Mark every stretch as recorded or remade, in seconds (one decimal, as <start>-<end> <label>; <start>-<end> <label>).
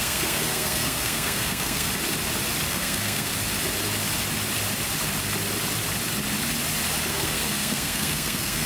0.0-1.9 remade; 1.9-2.7 recorded; 2.7-3.3 remade; 3.3-7.1 recorded; 7.1-8.7 remade